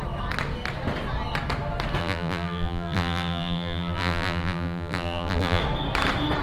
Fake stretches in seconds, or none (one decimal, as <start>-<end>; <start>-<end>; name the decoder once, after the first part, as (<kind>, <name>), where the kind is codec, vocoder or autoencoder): 2.0-5.6 (vocoder, BigVGAN v2)